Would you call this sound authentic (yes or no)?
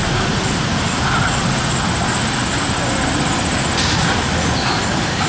yes